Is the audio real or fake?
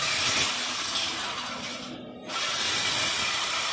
real